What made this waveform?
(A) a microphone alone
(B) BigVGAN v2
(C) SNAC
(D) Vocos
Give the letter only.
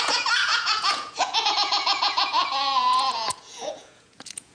D